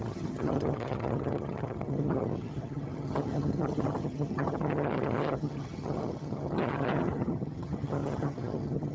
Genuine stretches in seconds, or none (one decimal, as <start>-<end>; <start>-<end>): none